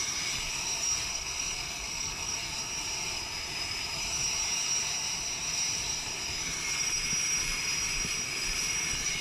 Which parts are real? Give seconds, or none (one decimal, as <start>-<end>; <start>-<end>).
0.0-1.1; 2.5-9.2